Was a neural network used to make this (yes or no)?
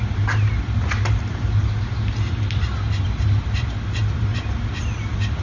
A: no